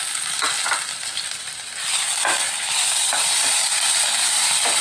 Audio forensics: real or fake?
fake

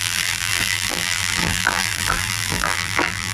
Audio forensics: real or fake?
fake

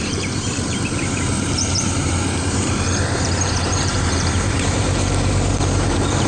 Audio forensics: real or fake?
fake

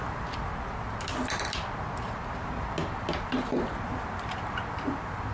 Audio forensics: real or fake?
real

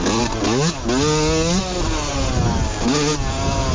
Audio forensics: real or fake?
real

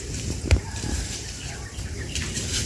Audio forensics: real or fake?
fake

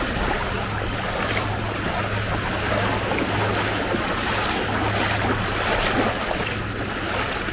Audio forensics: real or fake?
real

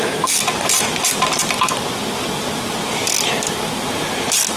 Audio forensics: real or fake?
real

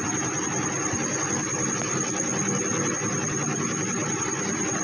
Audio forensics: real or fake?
real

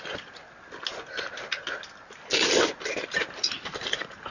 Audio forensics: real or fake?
real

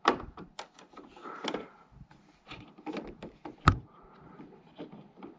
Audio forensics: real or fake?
fake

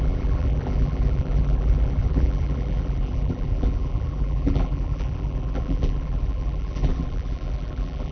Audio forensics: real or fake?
fake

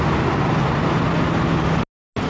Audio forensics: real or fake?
real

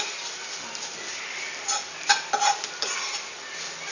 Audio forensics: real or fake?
real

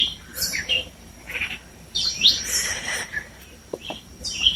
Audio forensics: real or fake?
fake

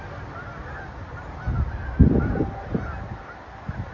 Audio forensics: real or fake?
real